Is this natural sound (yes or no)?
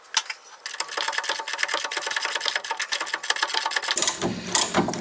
yes